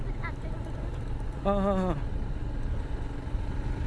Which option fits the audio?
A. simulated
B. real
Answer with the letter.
B